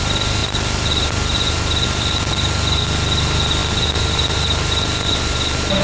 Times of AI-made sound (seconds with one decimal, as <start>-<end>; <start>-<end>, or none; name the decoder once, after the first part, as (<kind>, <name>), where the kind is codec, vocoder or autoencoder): 0.4-2.3 (vocoder, BigVGAN v2); 3.6-5.1